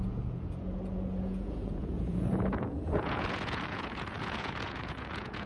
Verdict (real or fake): fake